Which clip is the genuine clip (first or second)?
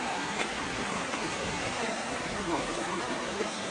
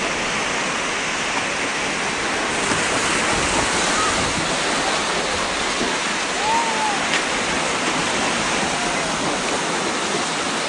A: second